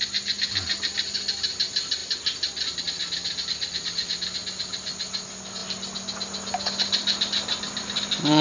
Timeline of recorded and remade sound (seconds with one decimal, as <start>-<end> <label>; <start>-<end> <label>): 0.0-8.4 recorded